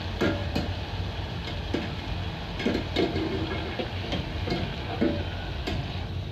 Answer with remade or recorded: recorded